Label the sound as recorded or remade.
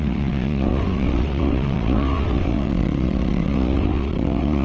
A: remade